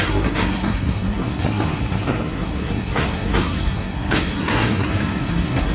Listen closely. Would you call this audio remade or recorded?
remade